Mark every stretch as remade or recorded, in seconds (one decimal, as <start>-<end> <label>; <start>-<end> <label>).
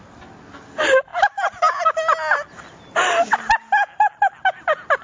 0.0-5.0 recorded